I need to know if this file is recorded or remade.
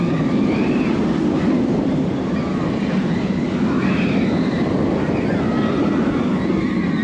recorded